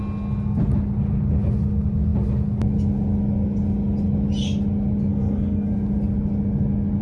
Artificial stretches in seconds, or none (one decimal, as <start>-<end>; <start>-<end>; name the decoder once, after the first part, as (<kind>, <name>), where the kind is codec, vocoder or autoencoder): 5.1-5.7 (codec, SNAC)

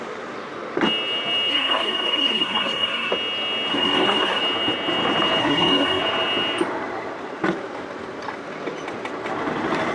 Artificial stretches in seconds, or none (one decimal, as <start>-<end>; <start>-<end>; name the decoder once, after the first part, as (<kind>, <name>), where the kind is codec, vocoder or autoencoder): 1.5-3.1 (codec, SNAC); 3.7-4.4; 5.4-6.0

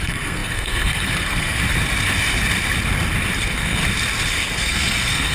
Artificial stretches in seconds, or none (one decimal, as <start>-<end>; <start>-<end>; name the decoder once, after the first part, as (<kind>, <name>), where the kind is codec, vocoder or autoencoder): 0.0-1.6 (codec, SNAC); 3.4-3.8; 4.3-5.3